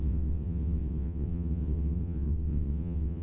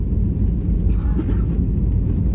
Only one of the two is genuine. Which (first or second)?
second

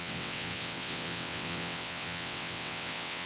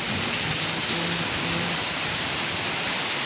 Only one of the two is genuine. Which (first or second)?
second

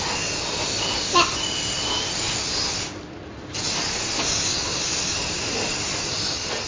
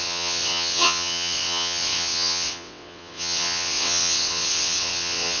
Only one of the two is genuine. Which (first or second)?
first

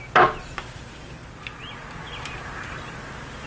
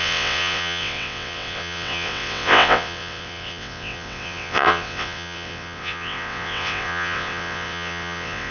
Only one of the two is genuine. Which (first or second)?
first